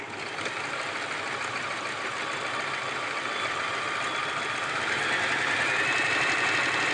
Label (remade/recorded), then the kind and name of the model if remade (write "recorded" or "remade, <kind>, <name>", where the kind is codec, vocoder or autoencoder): recorded